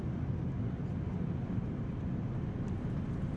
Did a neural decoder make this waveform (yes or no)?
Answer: no